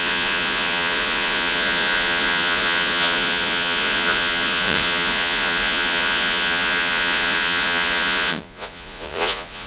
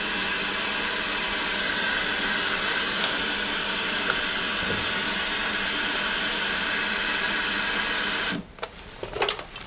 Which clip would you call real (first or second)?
second